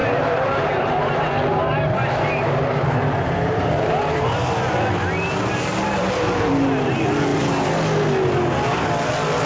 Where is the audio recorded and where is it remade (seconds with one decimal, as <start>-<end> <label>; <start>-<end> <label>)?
0.0-4.3 remade; 4.3-5.5 recorded; 5.5-6.5 remade; 6.5-9.5 recorded